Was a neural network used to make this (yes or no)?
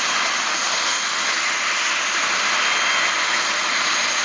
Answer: no